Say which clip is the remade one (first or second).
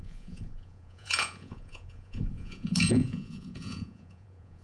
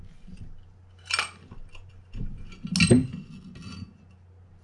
first